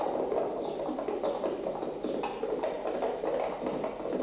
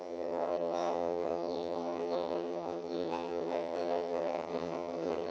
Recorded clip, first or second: first